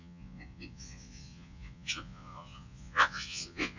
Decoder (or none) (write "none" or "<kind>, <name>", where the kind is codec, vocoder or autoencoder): vocoder, Vocos